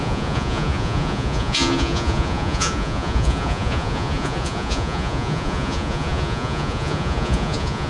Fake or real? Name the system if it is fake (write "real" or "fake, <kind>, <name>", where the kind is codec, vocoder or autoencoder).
fake, vocoder, Vocos